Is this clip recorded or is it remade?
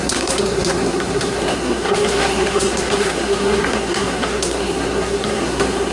remade